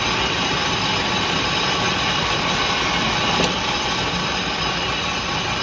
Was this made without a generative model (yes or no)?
no